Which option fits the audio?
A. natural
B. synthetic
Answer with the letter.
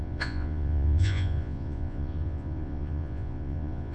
B